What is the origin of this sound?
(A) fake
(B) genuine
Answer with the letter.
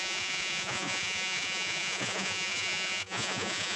A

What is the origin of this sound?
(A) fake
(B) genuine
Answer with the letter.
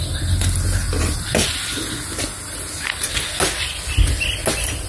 B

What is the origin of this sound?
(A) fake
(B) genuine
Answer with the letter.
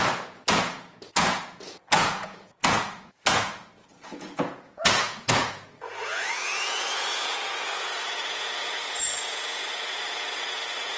A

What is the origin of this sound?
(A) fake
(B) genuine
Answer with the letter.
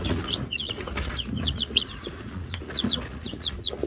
A